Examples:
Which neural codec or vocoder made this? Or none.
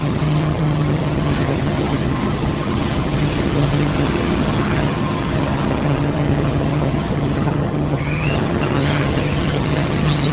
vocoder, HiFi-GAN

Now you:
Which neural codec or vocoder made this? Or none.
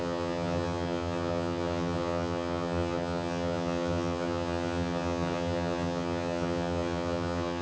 vocoder, HiFi-GAN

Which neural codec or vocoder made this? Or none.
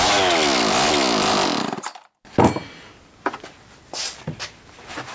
none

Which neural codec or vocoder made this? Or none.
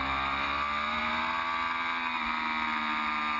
none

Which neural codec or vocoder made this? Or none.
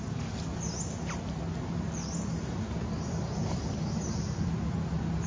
none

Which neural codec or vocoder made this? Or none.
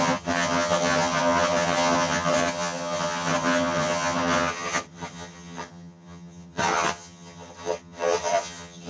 vocoder, HiFi-GAN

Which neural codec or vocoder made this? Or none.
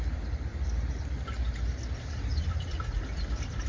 none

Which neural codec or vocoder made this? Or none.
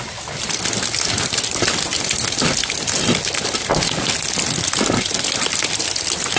none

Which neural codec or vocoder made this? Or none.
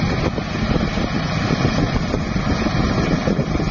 none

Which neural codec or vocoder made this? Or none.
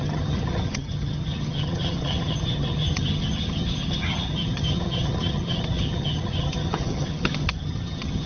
vocoder, HiFi-GAN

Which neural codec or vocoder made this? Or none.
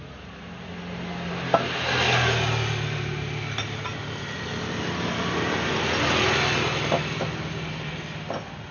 none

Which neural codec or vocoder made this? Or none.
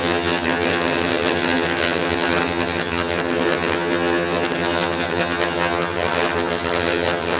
vocoder, HiFi-GAN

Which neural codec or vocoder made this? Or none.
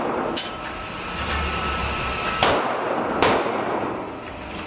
none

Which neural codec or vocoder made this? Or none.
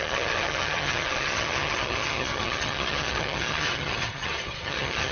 vocoder, HiFi-GAN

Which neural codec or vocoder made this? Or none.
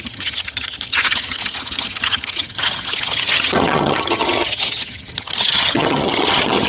vocoder, HiFi-GAN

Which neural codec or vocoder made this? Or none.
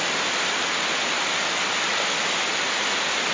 none